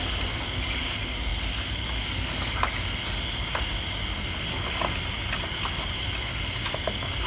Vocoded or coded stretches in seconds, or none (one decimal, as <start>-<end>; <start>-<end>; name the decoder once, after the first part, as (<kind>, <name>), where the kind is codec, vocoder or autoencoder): none